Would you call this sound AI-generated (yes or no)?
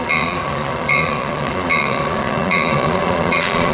yes